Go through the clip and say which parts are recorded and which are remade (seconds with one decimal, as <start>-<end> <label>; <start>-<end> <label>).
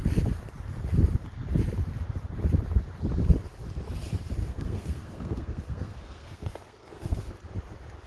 0.0-4.4 recorded; 4.4-7.3 remade; 7.3-8.1 recorded